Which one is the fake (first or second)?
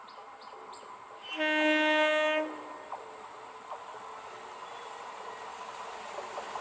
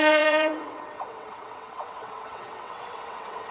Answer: second